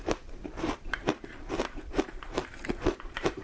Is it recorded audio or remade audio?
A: remade